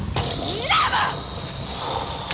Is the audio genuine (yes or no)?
yes